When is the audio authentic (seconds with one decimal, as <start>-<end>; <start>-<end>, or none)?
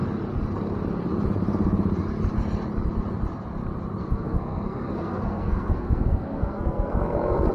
0.0-4.0